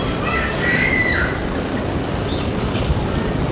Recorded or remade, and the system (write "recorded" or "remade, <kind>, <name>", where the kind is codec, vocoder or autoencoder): recorded